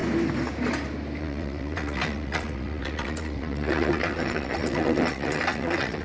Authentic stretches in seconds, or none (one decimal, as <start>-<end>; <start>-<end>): 0.0-1.2